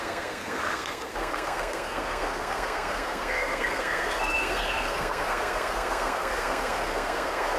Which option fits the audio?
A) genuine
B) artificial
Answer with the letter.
B